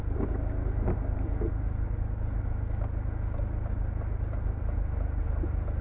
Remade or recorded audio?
recorded